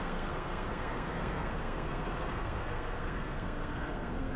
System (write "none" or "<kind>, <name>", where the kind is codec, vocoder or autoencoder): codec, SNAC